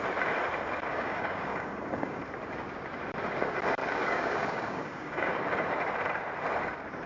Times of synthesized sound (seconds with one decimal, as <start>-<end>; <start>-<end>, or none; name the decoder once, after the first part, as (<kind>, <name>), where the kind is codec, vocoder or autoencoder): 0.9-2.2 (codec, DAC); 3.8-5.3